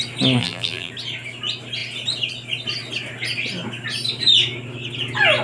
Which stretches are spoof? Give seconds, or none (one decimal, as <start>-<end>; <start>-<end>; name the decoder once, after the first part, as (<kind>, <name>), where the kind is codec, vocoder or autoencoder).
0.4-0.9 (vocoder, BigVGAN v2)